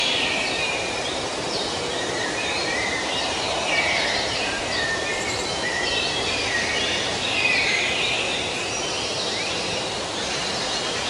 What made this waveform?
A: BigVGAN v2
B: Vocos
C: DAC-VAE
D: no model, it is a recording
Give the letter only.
A